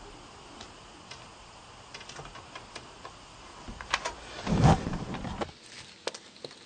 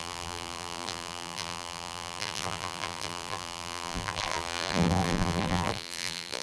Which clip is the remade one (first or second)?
second